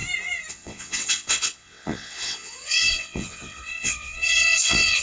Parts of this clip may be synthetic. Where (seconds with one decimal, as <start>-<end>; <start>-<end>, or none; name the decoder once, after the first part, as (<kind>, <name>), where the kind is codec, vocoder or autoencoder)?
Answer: 0.5-5.0 (vocoder, WaveNeXt)